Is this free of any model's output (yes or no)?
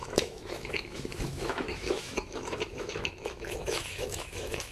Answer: no